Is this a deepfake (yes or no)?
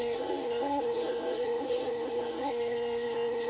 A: yes